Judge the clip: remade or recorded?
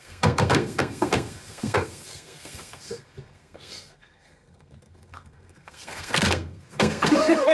remade